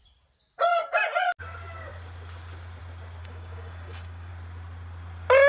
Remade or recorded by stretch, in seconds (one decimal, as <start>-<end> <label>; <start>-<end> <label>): 0.0-3.2 recorded; 3.2-4.3 remade; 4.3-5.5 recorded